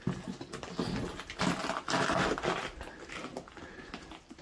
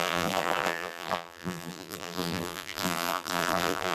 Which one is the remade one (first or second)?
second